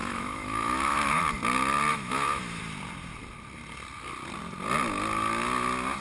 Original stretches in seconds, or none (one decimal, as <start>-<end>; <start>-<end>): 1.2-1.9; 2.6-6.0